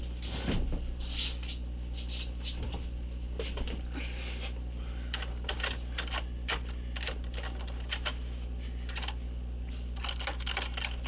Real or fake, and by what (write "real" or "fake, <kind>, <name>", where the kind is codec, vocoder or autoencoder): real